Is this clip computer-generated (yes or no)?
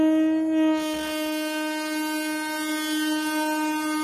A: no